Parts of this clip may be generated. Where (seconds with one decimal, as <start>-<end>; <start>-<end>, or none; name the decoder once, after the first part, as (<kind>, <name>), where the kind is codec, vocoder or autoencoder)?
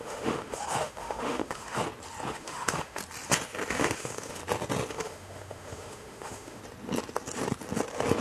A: 0.0-1.8 (autoencoder, DAC-VAE); 2.3-3.0; 3.7-4.4; 4.9-6.6